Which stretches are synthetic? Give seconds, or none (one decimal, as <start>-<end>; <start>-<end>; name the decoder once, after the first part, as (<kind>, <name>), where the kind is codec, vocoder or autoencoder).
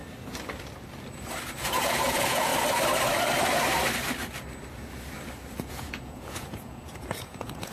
1.6-2.5 (vocoder, Vocos); 5.7-7.7